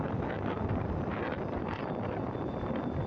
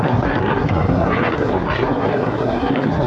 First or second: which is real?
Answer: first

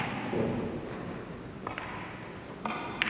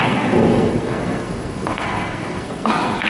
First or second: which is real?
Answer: first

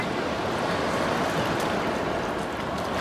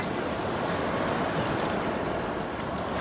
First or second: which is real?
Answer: first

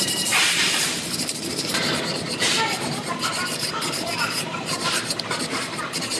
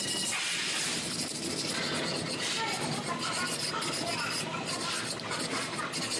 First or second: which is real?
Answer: second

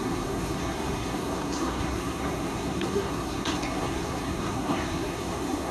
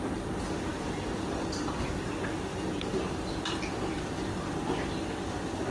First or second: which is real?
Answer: second